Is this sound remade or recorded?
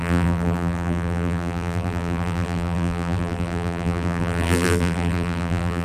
remade